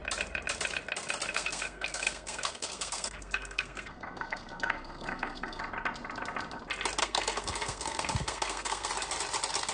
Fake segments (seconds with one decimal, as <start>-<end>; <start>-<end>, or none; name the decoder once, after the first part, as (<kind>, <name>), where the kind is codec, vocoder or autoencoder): 1.3-5.6 (codec, SNAC); 7.0-8.9